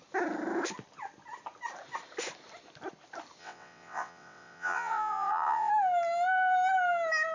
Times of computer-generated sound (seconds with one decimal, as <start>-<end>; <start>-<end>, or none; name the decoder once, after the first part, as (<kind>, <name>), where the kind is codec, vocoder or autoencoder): 3.4-5.7 (vocoder, WaveNeXt)